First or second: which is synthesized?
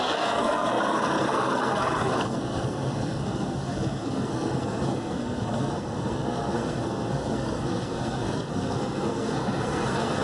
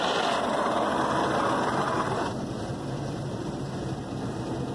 first